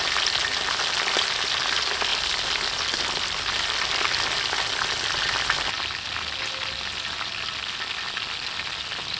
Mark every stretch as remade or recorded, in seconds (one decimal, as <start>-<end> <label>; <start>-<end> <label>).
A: 0.0-9.2 recorded